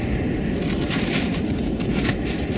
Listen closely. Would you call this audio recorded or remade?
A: recorded